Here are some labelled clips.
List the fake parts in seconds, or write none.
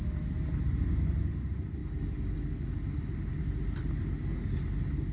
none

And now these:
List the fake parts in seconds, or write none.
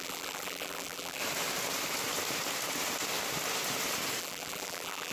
0.0-1.2; 4.2-5.1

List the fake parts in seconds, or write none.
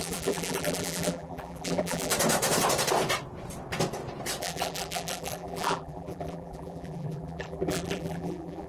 0.0-2.1; 4.4-8.7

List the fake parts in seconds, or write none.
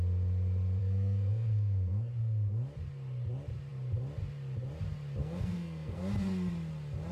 0.8-2.1; 5.2-6.0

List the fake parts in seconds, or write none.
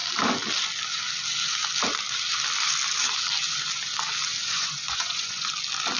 4.4-5.5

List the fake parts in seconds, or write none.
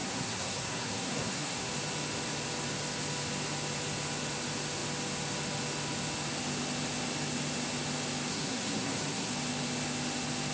0.0-1.7; 8.3-9.3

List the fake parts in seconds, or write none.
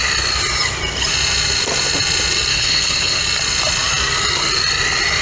2.5-3.2